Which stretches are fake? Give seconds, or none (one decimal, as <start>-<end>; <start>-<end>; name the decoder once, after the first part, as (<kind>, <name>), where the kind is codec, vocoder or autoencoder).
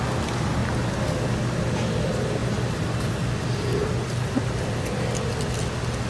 2.4-3.1 (vocoder, BigVGAN v2); 3.8-5.6